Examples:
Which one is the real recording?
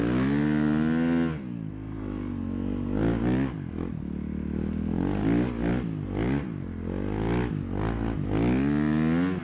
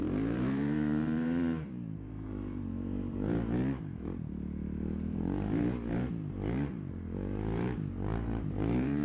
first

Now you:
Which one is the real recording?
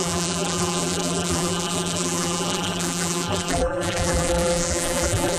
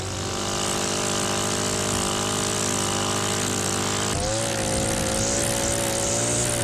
second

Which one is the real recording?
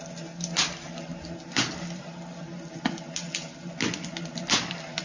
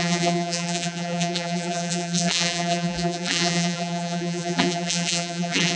first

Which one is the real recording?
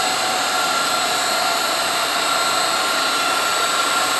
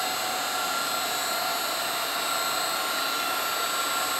second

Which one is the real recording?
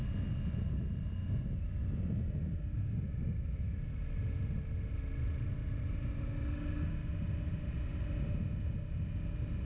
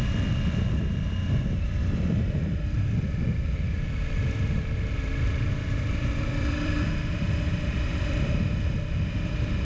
first